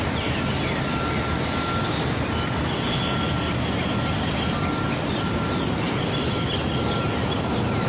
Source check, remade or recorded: recorded